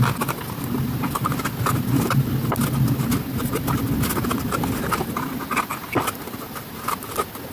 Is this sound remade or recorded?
recorded